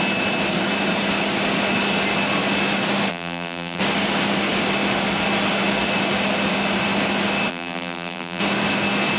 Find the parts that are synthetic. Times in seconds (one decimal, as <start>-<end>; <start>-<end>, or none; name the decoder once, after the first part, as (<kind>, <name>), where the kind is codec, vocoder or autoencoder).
3.1-3.8 (vocoder, BigVGAN v2); 7.5-8.4